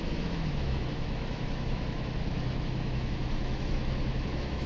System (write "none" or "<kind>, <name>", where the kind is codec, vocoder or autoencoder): autoencoder, DAC-VAE